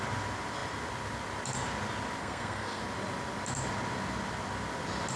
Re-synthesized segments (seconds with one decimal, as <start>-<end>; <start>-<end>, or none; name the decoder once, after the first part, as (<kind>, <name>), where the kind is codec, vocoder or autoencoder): 2.2-2.8 (codec, SNAC)